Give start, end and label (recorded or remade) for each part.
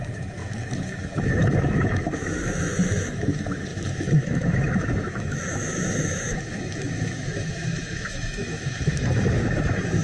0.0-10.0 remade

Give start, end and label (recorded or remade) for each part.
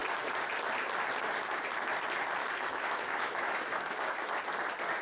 0.0-2.4 recorded; 2.4-4.4 remade; 4.4-5.0 recorded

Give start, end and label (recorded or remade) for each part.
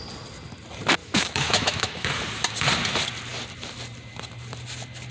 0.0-1.0 recorded; 1.0-2.2 remade; 2.2-5.1 recorded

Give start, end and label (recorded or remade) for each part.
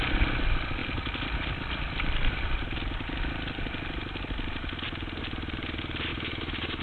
0.0-6.1 recorded; 6.1-6.8 remade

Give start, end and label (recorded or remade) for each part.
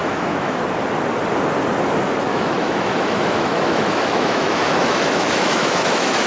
0.0-0.6 remade; 0.6-2.3 recorded; 2.3-6.3 remade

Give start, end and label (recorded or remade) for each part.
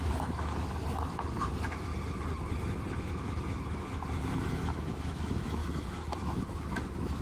0.0-1.9 remade; 1.9-2.9 recorded; 2.9-7.2 remade